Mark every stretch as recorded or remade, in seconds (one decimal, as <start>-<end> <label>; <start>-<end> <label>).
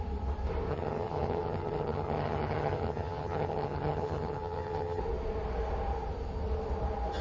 0.0-0.7 recorded; 0.7-5.0 remade; 5.0-7.2 recorded